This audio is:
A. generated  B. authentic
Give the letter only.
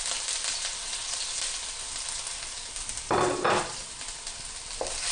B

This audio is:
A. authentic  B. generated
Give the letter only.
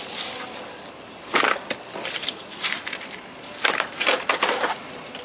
B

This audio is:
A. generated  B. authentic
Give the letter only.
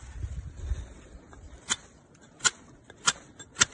B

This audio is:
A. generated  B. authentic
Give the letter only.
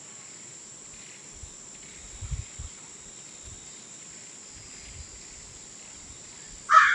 B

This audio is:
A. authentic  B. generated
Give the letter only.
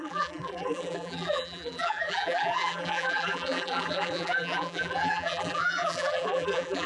B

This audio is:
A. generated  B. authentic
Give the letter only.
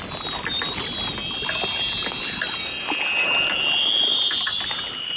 B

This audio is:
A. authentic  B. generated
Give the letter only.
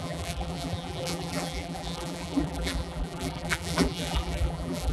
B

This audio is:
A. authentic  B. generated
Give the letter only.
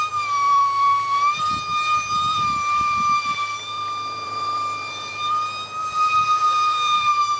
B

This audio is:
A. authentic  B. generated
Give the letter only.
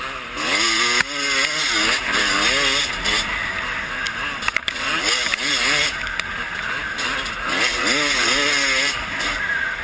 A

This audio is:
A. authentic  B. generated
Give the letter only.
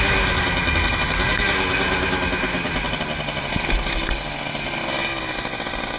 A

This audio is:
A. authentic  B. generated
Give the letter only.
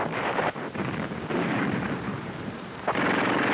B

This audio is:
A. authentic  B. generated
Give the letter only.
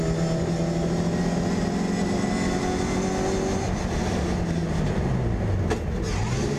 A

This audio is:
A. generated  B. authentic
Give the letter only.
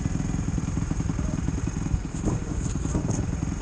A